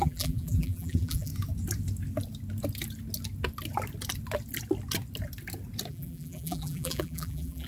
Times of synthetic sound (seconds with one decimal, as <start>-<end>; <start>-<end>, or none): 0.0-1.3; 5.9-7.7